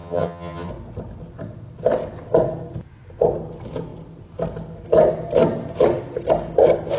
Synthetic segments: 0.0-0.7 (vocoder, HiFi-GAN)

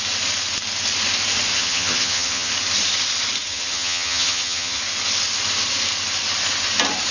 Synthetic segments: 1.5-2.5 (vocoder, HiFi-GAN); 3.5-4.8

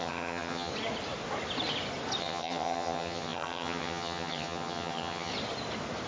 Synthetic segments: 0.0-0.7 (vocoder, HiFi-GAN); 2.2-5.3

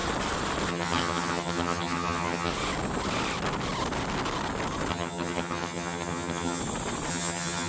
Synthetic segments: 0.7-2.5 (vocoder, HiFi-GAN); 4.9-6.6; 7.1-7.7

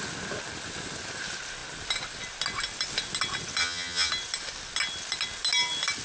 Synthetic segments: 3.6-4.1 (vocoder, HiFi-GAN)